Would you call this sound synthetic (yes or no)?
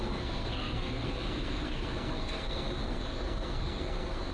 yes